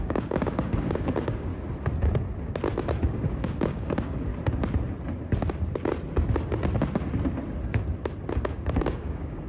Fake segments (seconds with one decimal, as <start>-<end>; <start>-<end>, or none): 0.0-1.5; 3.1-4.3; 8.3-9.5